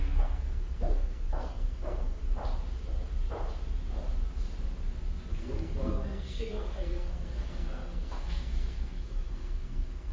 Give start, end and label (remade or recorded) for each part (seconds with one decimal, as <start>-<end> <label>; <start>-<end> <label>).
0.0-2.2 remade; 2.2-5.3 recorded; 5.3-10.1 remade